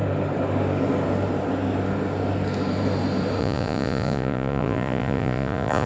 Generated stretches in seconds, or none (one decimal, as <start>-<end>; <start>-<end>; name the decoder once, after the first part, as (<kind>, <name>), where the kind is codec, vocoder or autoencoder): 3.4-5.9 (vocoder, Vocos)